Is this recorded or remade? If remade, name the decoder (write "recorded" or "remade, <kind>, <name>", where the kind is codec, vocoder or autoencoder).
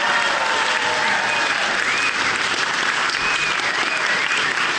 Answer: recorded